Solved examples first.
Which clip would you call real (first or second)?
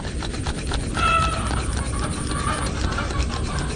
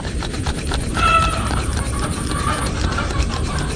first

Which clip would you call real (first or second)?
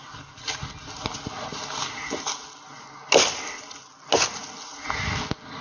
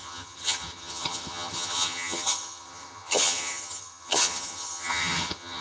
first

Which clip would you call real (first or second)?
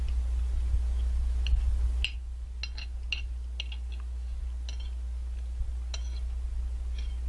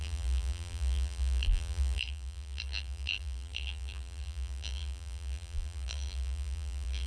first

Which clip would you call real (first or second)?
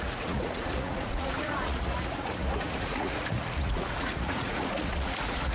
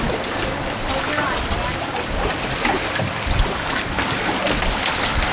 second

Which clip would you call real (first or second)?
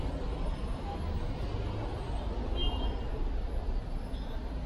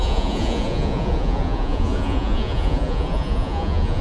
first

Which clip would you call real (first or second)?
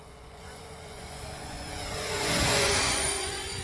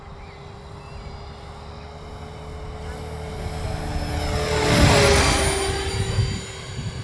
second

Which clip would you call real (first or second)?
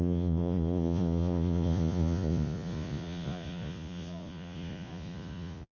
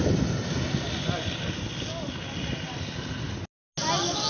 second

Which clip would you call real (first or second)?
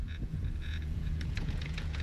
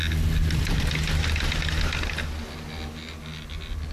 second